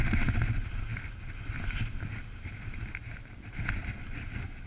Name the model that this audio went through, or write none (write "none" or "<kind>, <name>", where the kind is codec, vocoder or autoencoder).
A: none